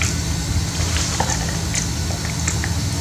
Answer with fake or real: real